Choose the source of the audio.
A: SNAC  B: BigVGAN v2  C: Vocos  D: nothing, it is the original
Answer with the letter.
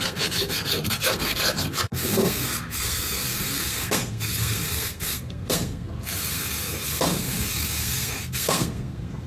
A